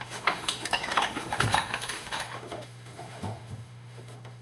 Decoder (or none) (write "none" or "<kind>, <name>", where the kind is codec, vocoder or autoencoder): autoencoder, DAC-VAE